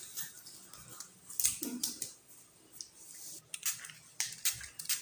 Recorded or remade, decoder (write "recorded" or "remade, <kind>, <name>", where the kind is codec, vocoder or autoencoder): recorded